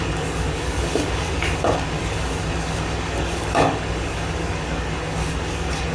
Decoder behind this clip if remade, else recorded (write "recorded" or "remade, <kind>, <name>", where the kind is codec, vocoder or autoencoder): remade, codec, DAC